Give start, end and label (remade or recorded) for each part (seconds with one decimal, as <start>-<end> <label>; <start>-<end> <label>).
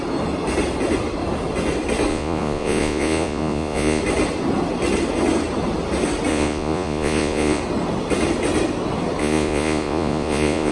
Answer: 0.0-2.1 recorded; 2.1-4.0 remade; 4.0-6.3 recorded; 6.3-7.6 remade; 7.6-9.2 recorded; 9.2-10.7 remade